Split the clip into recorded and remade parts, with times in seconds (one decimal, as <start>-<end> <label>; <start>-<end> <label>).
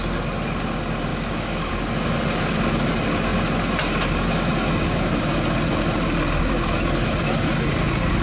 0.0-1.1 recorded; 1.1-1.7 remade; 1.7-8.2 recorded